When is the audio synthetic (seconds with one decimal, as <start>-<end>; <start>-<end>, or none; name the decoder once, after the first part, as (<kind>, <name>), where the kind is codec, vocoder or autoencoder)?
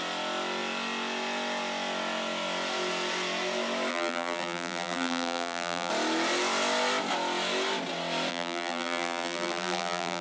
3.9-5.9 (vocoder, BigVGAN v2); 8.3-10.2